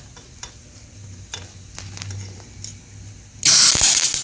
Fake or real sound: real